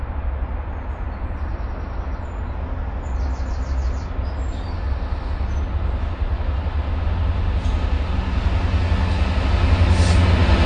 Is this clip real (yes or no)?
yes